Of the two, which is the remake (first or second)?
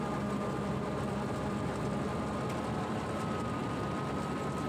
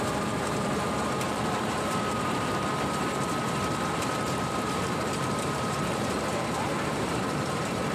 second